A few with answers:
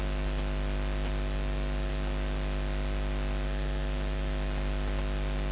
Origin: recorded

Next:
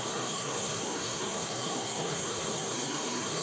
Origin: remade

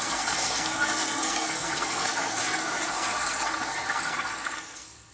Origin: remade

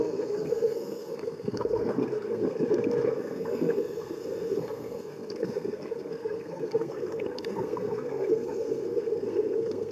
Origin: remade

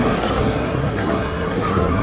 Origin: remade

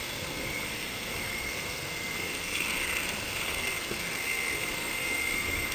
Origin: remade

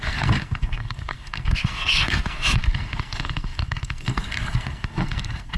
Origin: remade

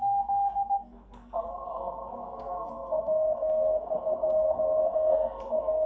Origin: remade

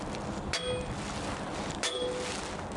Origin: recorded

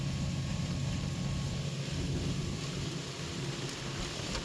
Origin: recorded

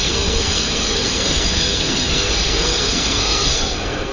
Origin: remade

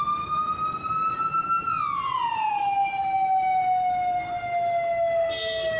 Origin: recorded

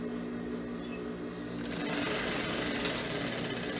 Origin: recorded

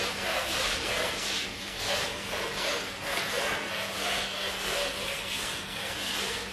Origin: remade